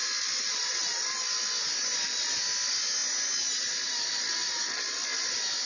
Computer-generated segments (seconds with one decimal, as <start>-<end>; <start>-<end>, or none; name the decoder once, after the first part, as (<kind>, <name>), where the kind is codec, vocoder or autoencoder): 0.0-1.2 (vocoder, BigVGAN v2)